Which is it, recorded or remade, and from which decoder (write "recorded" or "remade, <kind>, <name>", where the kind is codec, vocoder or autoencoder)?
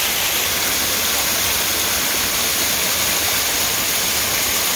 recorded